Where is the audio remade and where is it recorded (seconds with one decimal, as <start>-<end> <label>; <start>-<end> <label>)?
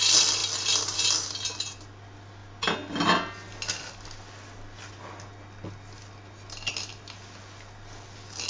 0.0-8.5 recorded